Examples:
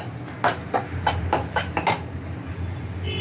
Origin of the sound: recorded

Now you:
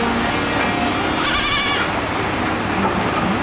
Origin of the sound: recorded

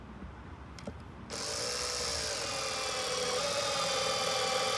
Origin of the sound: recorded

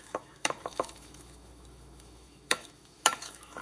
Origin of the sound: remade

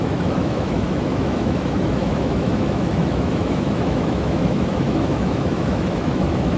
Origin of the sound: remade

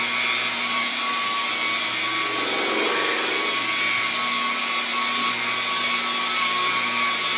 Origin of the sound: recorded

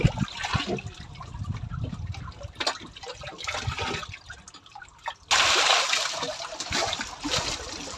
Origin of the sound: recorded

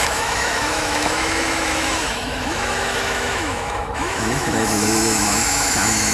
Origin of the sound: remade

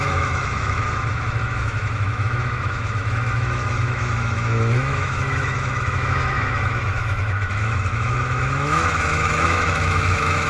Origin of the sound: remade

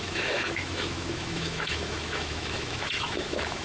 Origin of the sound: remade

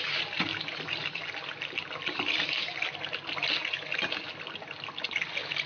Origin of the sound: recorded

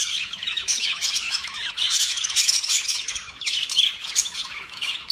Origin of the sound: remade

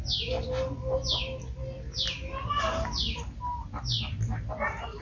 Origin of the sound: recorded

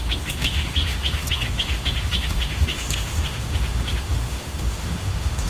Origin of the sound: remade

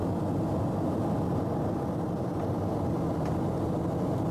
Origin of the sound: recorded